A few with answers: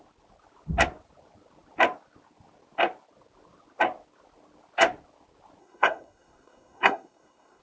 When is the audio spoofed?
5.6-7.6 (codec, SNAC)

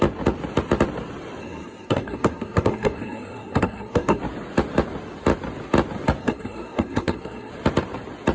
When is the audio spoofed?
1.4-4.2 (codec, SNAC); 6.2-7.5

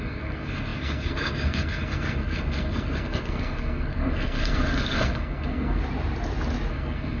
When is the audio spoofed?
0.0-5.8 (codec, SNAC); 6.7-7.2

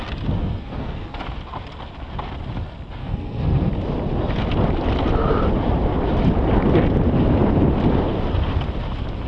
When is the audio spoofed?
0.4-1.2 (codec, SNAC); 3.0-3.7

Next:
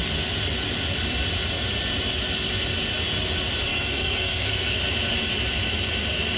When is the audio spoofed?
3.7-4.8 (codec, SNAC)

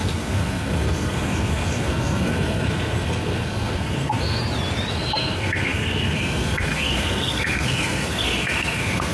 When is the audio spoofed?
0.0-4.4 (codec, SNAC); 4.9-9.1

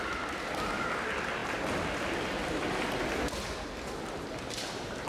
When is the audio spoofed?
none

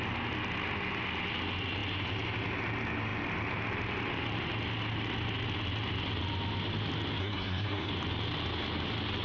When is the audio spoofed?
7.2-7.9 (codec, SNAC)